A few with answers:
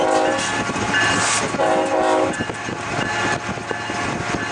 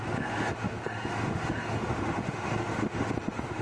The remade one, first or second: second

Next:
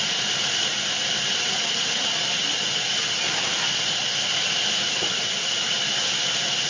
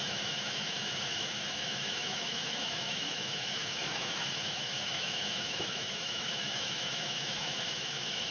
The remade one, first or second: second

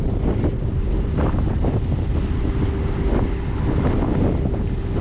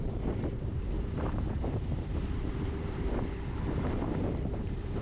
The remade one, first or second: second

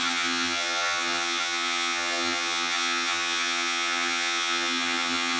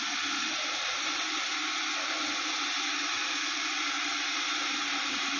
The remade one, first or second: first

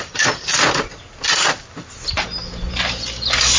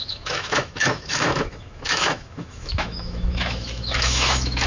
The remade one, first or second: second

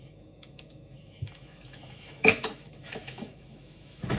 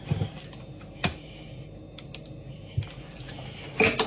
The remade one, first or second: first